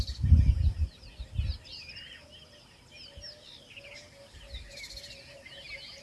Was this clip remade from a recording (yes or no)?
no